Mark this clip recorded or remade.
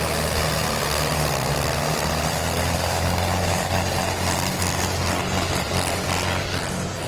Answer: recorded